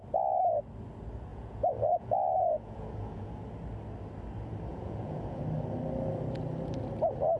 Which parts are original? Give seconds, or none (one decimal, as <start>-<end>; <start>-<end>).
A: 0.0-1.3; 3.3-4.7; 5.4-7.4